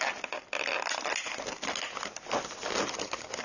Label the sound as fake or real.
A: real